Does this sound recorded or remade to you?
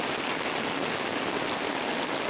recorded